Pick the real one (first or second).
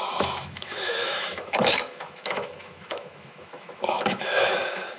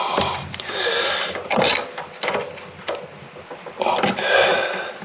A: second